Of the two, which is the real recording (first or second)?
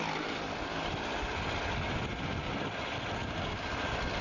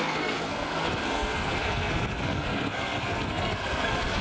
first